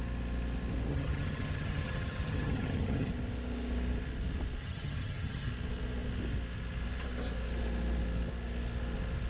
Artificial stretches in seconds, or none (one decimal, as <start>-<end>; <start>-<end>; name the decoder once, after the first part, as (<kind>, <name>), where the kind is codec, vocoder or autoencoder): 0.9-3.1 (vocoder, HiFi-GAN); 4.6-5.5